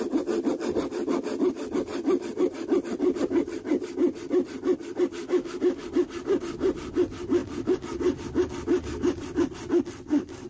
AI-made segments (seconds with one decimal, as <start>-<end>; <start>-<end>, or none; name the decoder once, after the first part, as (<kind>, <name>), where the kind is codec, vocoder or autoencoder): none